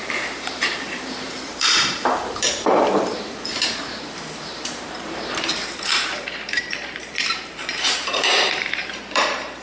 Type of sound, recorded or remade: remade